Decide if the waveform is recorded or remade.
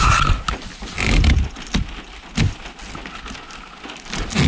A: recorded